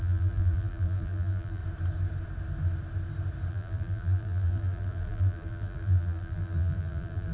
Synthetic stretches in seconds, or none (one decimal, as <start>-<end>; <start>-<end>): 0.0-1.6; 3.5-7.3